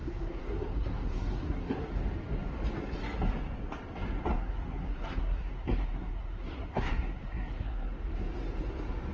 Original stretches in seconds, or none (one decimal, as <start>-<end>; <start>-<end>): 1.9-4.3; 7.9-9.1